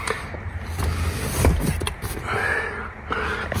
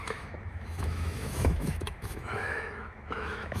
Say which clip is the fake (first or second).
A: second